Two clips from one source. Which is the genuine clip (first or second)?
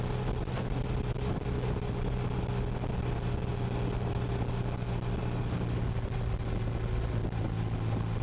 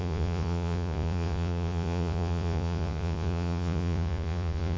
first